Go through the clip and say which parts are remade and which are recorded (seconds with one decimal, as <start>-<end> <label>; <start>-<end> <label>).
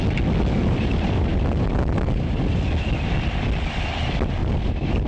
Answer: 0.0-0.6 recorded; 0.6-2.7 remade; 2.7-4.4 recorded; 4.4-5.1 remade